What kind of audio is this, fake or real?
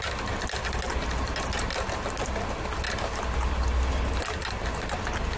real